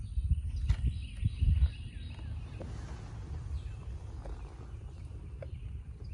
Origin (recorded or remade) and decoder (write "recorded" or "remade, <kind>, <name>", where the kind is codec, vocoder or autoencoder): recorded